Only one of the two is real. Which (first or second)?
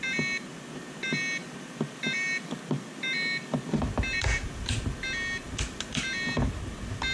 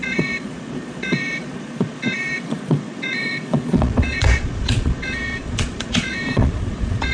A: first